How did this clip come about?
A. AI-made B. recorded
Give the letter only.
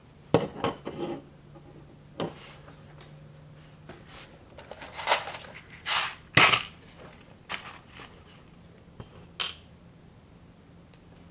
B